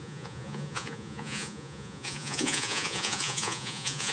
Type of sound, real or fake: fake